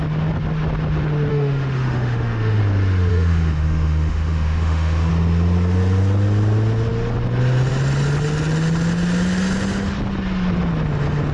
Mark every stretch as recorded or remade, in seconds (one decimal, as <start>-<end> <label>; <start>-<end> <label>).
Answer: 0.0-1.3 recorded; 1.3-2.6 remade; 2.6-3.1 recorded; 3.1-5.1 remade; 5.1-11.3 recorded